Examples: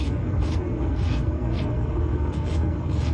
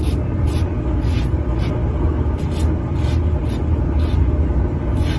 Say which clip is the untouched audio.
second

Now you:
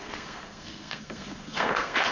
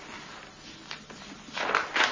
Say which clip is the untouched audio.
second